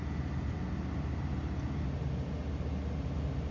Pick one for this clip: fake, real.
real